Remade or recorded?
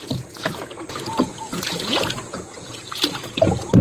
remade